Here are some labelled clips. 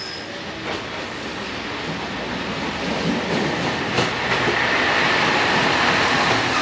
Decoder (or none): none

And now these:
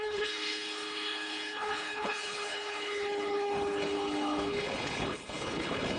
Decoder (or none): codec, HILCodec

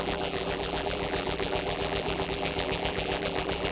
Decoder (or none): vocoder, BigVGAN v2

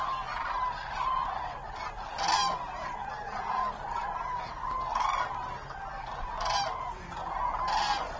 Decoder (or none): none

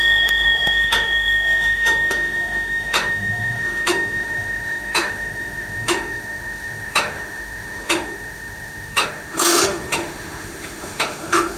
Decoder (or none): autoencoder, DAC-VAE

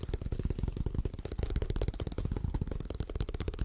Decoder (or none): none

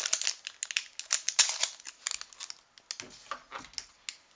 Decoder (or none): none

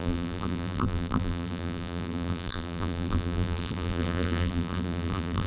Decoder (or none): vocoder, BigVGAN v2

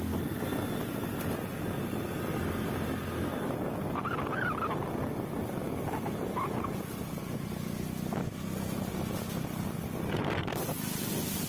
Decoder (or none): none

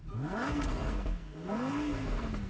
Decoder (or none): codec, SNAC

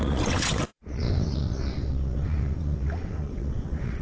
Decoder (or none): vocoder, WaveNeXt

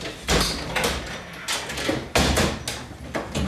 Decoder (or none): none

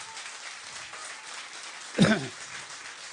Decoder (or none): none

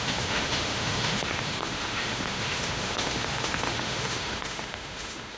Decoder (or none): autoencoder, DAC-VAE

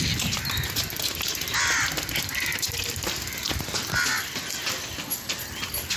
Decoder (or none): none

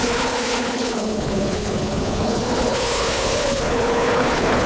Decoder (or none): codec, HILCodec